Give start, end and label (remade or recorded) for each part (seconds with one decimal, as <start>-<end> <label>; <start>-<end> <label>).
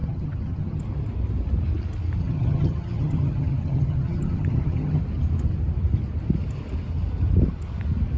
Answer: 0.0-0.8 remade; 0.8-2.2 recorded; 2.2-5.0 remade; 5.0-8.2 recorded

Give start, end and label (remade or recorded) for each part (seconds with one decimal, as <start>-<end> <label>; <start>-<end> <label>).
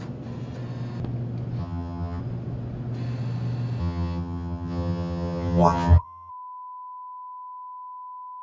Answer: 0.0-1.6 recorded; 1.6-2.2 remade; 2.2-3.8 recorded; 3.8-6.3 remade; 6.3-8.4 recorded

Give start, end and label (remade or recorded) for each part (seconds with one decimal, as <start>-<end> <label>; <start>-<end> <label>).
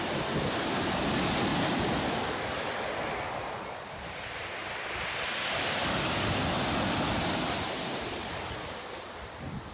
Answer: 0.0-9.7 recorded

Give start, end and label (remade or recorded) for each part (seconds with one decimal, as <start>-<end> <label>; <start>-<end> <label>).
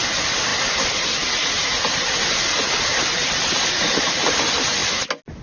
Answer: 0.0-5.4 recorded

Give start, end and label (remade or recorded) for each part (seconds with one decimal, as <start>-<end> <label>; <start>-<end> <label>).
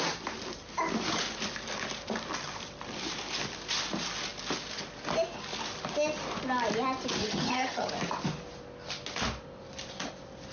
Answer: 0.0-7.2 recorded; 7.2-7.9 remade; 7.9-10.5 recorded